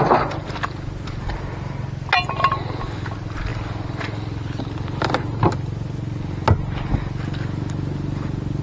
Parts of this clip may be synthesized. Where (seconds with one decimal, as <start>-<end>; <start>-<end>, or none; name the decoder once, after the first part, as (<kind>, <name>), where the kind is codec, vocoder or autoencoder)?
none